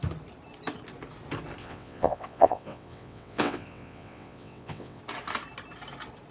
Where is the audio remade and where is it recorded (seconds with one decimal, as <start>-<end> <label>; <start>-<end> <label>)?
0.0-1.6 recorded; 1.6-5.0 remade; 5.0-6.3 recorded